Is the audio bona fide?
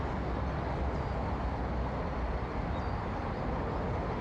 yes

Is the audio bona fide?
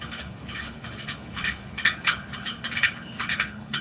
no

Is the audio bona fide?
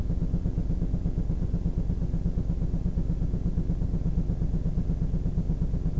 yes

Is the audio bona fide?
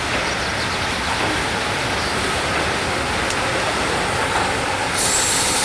yes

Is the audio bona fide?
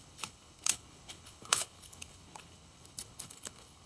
no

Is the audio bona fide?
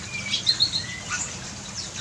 yes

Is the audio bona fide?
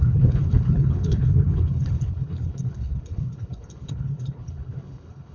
no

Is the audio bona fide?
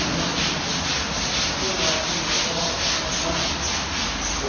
yes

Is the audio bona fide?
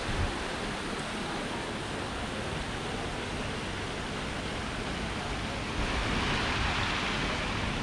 yes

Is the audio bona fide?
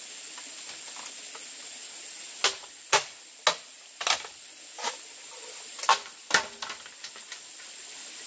yes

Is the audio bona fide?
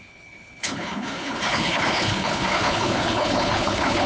no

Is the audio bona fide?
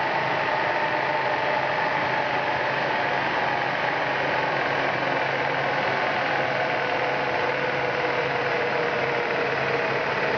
yes